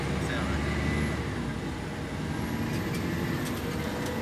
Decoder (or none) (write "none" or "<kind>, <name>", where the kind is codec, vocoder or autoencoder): none